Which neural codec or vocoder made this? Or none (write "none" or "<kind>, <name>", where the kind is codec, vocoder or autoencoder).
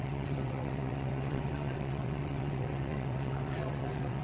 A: vocoder, WaveNeXt